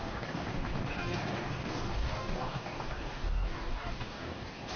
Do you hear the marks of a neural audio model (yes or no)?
yes